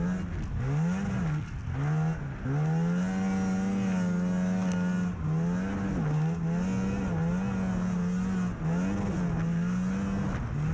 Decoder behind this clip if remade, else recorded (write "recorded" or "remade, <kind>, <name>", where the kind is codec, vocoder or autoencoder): recorded